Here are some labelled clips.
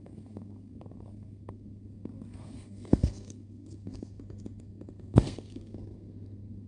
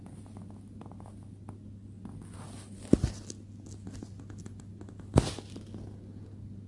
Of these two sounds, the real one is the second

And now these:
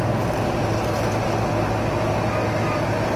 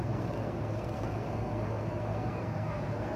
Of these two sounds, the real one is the first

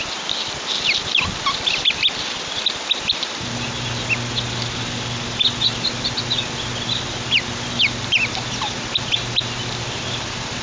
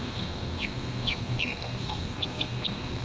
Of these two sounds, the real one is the first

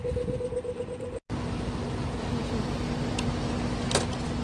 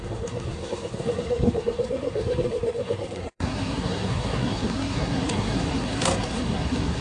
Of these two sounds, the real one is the first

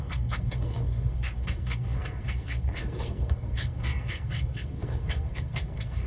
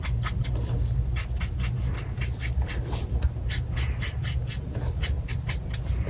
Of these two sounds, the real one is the second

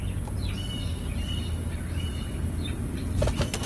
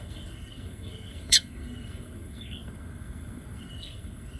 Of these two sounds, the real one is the first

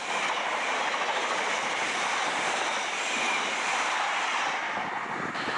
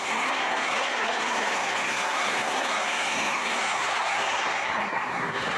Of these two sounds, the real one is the first